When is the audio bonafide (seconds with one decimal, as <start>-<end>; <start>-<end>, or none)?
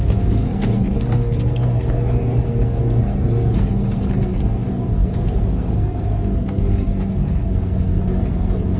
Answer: none